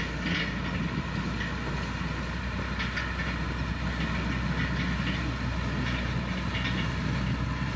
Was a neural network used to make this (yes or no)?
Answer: no